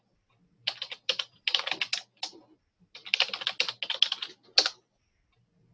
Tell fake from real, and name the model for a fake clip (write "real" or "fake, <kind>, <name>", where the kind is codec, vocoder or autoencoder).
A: real